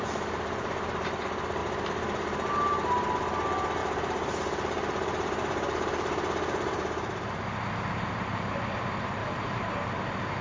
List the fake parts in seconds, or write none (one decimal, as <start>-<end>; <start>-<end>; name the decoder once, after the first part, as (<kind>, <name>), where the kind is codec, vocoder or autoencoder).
1.6-2.5 (vocoder, BigVGAN v2); 3.8-8.5; 9.2-9.8